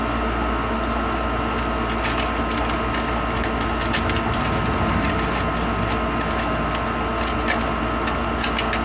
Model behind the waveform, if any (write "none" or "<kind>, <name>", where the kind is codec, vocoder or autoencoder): none